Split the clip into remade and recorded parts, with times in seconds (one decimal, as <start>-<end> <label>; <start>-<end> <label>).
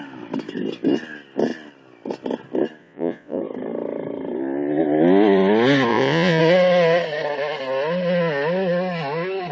0.0-2.8 recorded; 2.8-3.4 remade; 3.4-5.9 recorded; 5.9-6.4 remade; 6.4-9.5 recorded